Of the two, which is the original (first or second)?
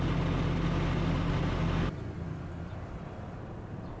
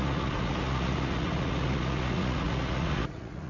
first